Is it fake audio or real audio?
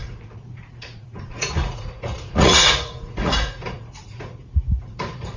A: fake